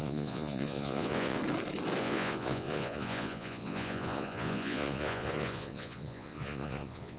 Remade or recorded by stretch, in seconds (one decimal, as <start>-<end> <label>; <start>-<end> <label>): 0.0-1.4 remade; 1.4-2.0 recorded; 2.0-7.2 remade